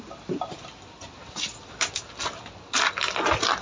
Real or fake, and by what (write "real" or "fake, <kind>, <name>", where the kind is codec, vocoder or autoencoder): real